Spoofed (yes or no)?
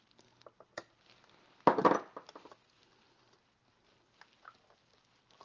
no